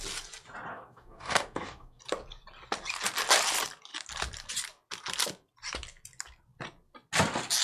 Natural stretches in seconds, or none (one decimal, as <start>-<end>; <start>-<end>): 0.0-0.7; 2.0-7.6